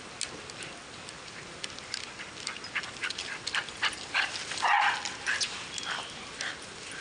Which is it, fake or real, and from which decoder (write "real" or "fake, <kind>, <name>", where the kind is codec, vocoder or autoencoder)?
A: real